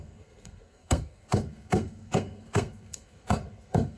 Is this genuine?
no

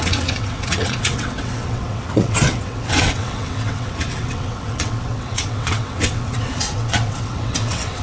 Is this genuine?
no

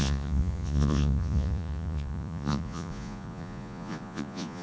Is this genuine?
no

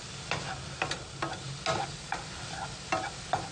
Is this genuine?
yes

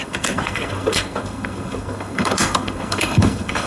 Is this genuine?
no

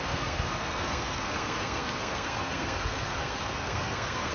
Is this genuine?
no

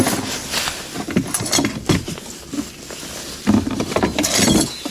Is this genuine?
yes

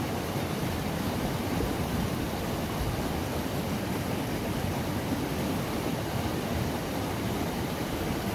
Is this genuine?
yes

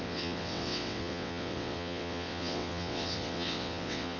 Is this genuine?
no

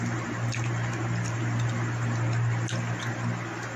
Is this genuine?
yes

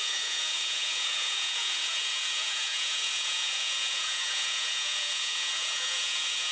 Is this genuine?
no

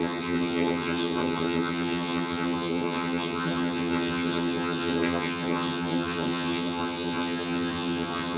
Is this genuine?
no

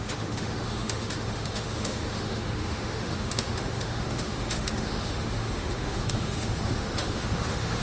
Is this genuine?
no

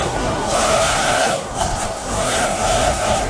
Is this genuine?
no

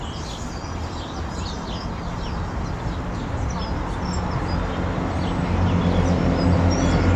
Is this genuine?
yes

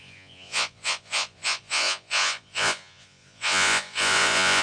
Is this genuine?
no